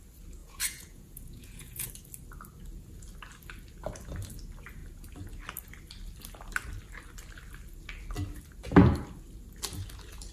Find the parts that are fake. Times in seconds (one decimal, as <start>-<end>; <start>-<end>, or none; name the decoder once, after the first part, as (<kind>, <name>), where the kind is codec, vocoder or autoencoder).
0.4-1.9 (vocoder, Vocos)